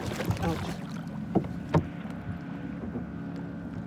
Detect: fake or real real